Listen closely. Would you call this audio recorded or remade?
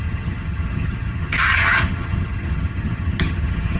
remade